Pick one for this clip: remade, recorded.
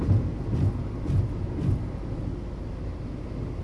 recorded